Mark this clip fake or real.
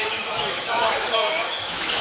fake